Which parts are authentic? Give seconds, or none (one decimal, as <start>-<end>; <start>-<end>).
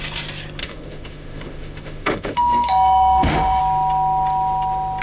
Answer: 0.0-0.6; 3.6-5.0